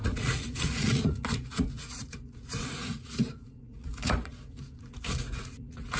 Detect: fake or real fake